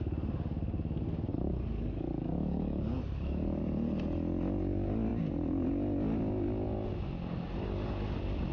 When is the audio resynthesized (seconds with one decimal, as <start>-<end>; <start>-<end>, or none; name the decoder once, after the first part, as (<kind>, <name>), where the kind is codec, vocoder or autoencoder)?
1.3-3.6 (codec, DAC)